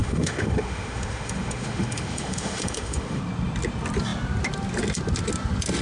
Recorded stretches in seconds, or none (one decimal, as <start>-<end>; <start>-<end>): 3.2-5.8

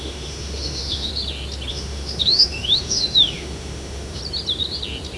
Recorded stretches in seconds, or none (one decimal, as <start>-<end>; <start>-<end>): 1.1-1.7; 4.2-5.2

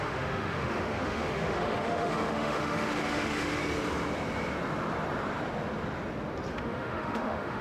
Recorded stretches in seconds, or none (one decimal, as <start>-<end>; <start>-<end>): 3.6-6.5

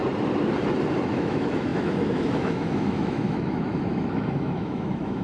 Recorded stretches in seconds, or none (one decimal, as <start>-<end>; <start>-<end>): 0.0-1.1

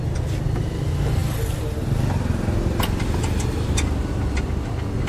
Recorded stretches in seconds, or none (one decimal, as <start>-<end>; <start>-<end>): 0.0-5.1